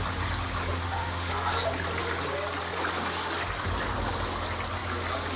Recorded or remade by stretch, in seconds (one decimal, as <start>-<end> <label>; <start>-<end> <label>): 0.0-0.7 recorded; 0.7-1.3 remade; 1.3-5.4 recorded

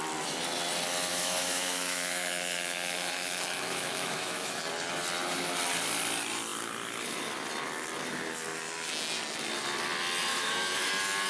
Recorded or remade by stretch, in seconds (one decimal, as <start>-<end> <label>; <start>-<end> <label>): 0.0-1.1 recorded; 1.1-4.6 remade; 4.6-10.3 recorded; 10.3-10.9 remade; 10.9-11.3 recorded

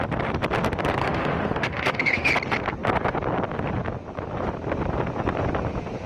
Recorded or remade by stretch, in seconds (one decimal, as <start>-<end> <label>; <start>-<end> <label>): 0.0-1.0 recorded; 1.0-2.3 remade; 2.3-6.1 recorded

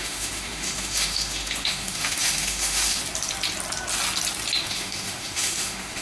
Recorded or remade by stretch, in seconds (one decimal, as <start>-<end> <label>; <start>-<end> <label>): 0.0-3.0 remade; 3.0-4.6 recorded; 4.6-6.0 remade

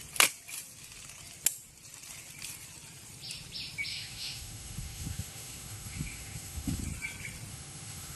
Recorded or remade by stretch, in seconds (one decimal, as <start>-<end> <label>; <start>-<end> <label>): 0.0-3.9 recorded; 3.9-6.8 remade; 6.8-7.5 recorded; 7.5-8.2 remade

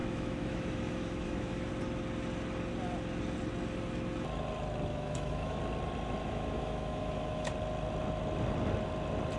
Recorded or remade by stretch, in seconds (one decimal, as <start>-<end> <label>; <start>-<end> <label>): 0.0-1.7 remade; 1.7-4.9 recorded; 4.9-5.6 remade; 5.6-6.2 recorded; 6.2-7.5 remade; 7.5-9.4 recorded

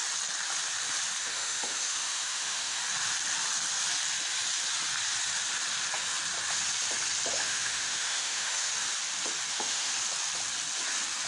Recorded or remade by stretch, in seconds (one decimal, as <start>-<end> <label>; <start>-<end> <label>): 0.0-1.2 recorded; 1.2-2.8 remade; 2.8-7.3 recorded; 7.3-8.7 remade; 8.7-9.5 recorded; 9.5-9.9 remade; 9.9-11.3 recorded